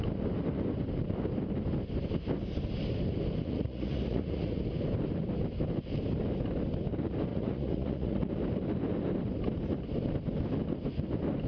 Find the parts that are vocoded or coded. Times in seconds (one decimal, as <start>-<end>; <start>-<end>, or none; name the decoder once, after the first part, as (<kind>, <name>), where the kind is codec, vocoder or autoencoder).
3.4-4.6 (vocoder, Vocos); 7.3-8.3